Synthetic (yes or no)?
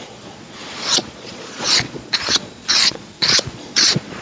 yes